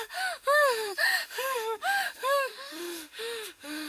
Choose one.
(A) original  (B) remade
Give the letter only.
B